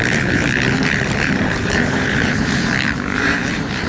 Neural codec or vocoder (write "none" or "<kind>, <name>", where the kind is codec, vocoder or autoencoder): vocoder, BigVGAN v2